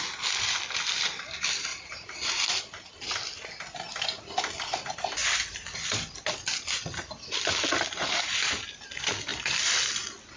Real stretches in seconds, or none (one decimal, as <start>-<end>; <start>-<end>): 0.0-1.7; 2.9-10.4